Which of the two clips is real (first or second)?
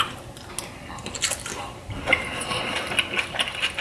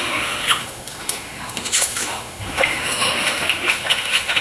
first